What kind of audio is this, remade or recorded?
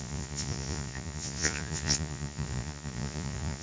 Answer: remade